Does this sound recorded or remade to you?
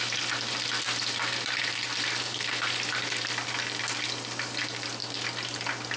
recorded